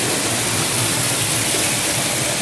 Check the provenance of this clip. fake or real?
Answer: fake